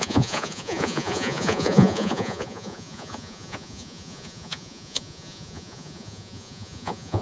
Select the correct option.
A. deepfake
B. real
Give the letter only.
A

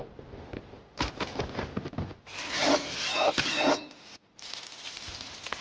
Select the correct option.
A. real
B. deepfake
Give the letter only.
A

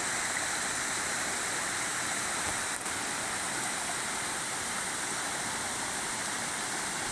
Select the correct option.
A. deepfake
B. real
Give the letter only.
B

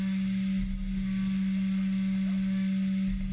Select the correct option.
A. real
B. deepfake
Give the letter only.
A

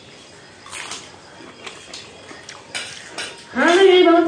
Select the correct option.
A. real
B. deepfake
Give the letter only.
A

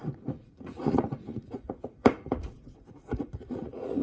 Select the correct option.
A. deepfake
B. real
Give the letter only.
A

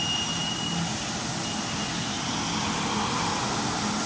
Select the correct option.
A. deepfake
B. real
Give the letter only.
B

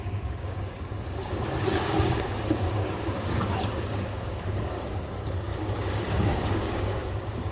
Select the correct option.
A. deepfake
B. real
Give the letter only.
A